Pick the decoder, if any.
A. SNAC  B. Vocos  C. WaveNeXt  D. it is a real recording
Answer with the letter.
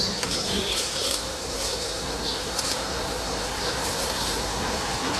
A